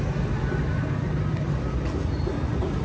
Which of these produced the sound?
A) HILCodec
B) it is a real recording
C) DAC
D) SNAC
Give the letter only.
B